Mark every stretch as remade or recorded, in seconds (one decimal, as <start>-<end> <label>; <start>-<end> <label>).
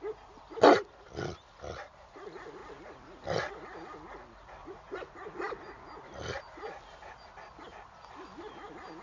0.0-4.6 recorded; 4.6-5.1 remade; 5.1-9.0 recorded